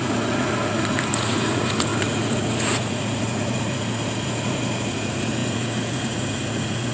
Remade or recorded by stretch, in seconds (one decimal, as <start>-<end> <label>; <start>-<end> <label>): 0.0-6.9 remade

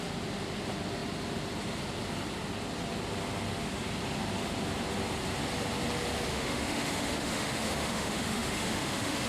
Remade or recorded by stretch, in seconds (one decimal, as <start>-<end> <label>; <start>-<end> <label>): 0.0-6.3 recorded; 6.3-9.3 remade